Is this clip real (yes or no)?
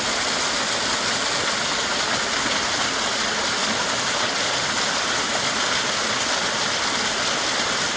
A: yes